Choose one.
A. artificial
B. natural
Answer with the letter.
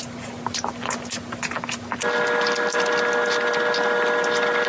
B